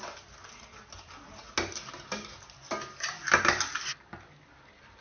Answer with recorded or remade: recorded